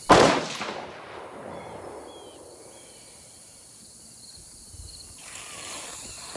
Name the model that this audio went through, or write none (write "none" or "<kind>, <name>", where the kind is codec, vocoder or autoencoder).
none